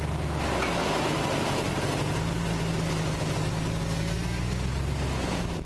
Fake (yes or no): no